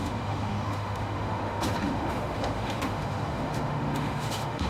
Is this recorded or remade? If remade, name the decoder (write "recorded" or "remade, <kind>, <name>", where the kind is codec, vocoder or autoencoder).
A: remade, autoencoder, DAC-VAE